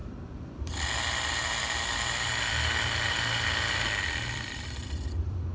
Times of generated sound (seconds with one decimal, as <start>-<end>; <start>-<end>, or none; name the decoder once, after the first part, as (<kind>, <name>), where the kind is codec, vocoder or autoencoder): 0.0-5.5 (vocoder, BigVGAN v2)